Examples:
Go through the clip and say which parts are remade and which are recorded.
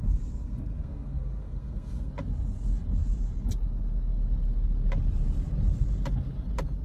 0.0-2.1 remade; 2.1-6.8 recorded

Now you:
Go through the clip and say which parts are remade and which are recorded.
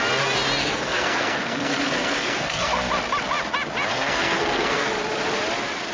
0.0-0.6 recorded; 0.6-2.9 remade; 2.9-3.9 recorded; 3.9-4.9 remade; 4.9-5.9 recorded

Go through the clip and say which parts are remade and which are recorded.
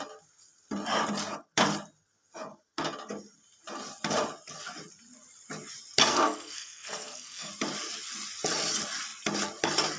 0.0-6.1 recorded; 6.1-7.5 remade; 7.5-10.0 recorded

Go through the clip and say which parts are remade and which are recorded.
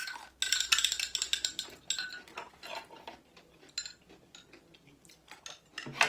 0.0-6.1 recorded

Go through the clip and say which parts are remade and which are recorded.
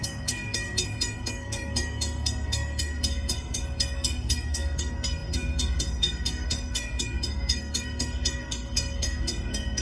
0.0-9.8 remade